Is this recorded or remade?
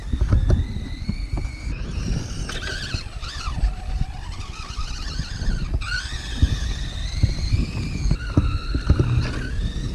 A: recorded